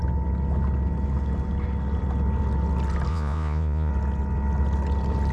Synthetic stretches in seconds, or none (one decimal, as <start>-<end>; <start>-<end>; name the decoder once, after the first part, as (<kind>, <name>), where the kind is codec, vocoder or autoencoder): 3.1-3.9 (vocoder, Vocos)